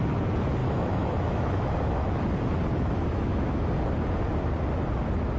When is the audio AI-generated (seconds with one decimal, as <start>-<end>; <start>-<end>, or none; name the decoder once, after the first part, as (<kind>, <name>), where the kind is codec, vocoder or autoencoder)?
0.6-2.1 (autoencoder, DAC-VAE); 2.7-3.7